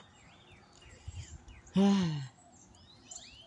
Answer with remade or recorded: recorded